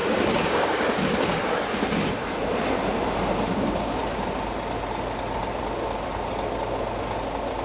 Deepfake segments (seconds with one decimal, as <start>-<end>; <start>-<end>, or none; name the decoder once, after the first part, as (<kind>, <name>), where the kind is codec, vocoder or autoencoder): 0.0-1.0 (codec, DAC); 3.5-4.0